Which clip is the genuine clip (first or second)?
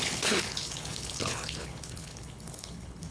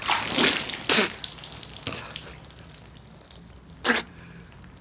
second